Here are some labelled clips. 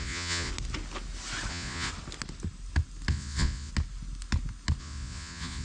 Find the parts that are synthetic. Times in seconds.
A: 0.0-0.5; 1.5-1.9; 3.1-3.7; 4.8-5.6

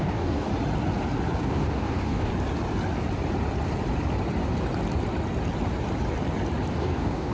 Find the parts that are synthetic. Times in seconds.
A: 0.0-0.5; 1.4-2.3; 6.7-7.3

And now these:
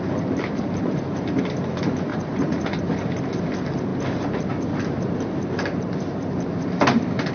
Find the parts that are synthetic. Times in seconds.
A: 2.1-2.8

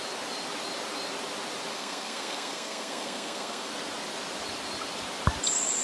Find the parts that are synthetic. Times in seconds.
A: 1.7-3.7

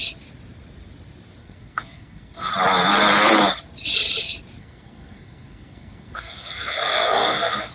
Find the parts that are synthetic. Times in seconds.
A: 1.4-2.5; 4.6-7.7

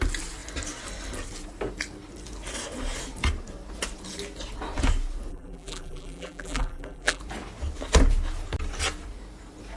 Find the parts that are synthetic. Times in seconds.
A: 5.3-7.2

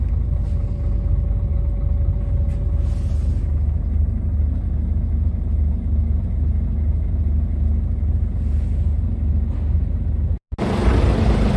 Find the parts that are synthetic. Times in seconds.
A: none